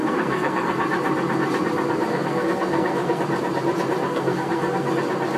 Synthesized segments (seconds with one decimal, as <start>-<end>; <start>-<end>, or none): 0.0-0.8; 2.1-3.2; 4.1-4.9